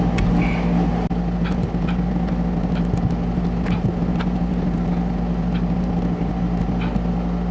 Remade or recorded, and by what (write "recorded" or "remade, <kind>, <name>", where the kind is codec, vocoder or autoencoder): recorded